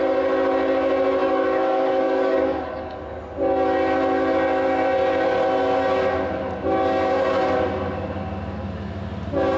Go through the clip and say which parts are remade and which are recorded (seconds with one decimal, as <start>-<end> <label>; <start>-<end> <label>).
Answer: 0.0-1.2 recorded; 1.2-3.0 remade; 3.0-9.6 recorded